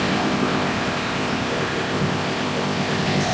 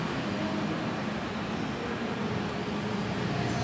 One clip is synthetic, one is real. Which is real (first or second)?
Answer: second